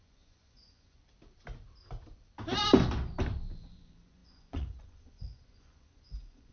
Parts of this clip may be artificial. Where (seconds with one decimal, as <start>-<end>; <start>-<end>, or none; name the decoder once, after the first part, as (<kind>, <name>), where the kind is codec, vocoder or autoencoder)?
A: 0.0-1.0 (vocoder, Vocos); 3.5-6.5